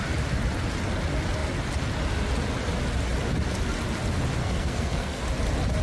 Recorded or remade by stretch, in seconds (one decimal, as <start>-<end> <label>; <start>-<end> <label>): 0.0-4.4 recorded; 4.4-5.2 remade; 5.2-5.8 recorded